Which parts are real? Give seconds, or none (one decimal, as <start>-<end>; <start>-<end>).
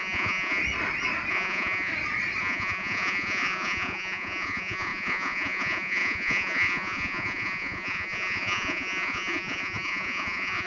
0.6-1.3; 1.9-2.4